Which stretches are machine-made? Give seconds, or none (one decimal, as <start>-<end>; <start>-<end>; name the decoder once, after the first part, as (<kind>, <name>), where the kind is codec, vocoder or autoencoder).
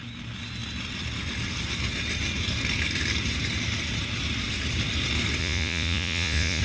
5.4-6.6 (vocoder, Vocos)